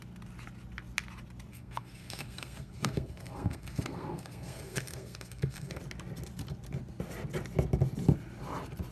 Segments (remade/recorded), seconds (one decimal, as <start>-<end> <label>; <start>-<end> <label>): 0.0-1.5 recorded; 1.5-5.8 remade; 5.8-8.9 recorded